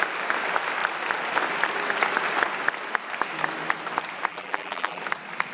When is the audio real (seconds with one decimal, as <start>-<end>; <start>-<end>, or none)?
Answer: 0.0-4.3; 5.0-5.5